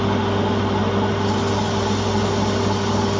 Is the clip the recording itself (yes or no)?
yes